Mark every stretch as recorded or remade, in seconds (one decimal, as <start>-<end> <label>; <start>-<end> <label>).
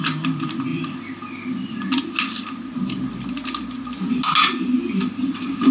0.0-5.7 recorded